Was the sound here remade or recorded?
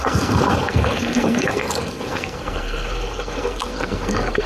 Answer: remade